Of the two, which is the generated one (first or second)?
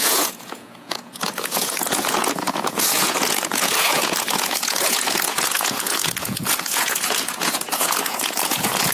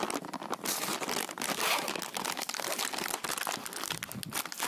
first